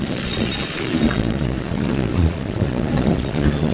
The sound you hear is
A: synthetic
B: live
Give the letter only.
A